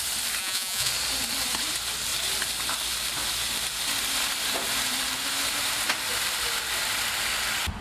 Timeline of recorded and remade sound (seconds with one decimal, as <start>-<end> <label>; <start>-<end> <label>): 0.0-0.4 recorded; 0.4-0.9 remade; 0.9-7.8 recorded